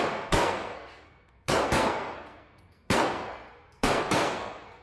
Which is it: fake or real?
fake